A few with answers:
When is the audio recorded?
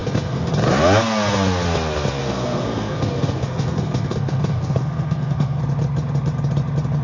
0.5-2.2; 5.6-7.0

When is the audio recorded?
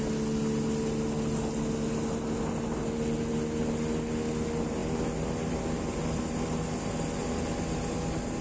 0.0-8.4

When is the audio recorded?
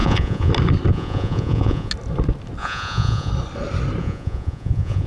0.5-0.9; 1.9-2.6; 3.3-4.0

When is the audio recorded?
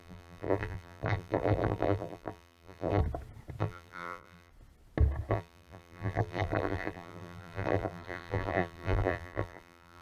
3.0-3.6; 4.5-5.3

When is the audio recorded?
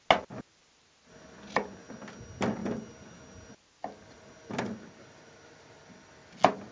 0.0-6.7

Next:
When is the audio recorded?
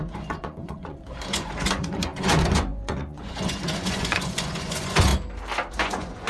5.1-5.7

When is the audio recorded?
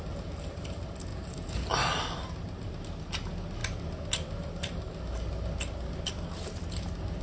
0.0-7.2